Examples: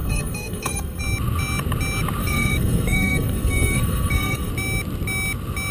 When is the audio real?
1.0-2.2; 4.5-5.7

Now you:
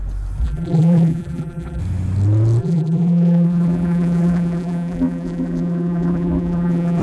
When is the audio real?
0.0-0.4; 1.8-2.6